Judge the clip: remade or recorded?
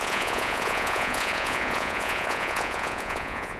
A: remade